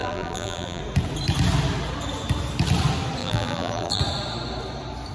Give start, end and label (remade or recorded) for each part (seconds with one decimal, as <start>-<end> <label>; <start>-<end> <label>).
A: 0.0-0.8 remade; 0.8-3.2 recorded; 3.2-4.0 remade; 4.0-5.1 recorded